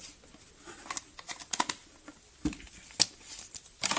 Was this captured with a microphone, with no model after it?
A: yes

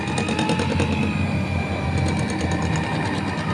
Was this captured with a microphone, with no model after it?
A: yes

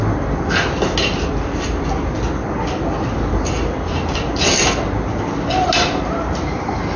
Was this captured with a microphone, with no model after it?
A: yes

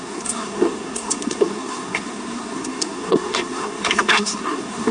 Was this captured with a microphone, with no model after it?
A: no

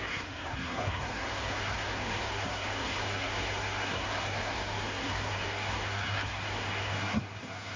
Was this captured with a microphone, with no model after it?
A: no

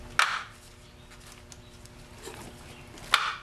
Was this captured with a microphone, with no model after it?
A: yes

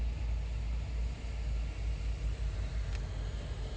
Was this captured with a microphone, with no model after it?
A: yes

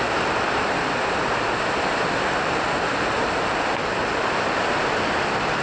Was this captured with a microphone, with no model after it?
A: yes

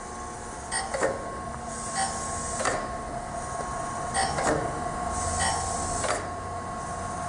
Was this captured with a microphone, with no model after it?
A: yes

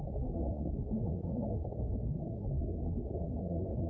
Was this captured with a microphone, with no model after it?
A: no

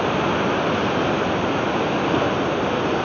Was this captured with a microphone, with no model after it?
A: yes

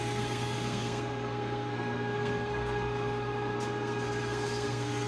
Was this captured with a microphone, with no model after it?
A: no